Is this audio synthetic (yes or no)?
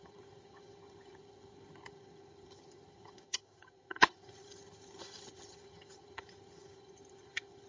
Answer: yes